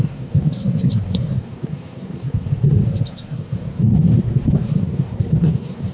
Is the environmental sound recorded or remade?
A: remade